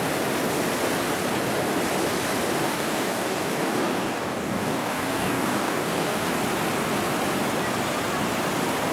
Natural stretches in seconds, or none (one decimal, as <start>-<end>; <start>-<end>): 0.0-2.6; 6.3-8.9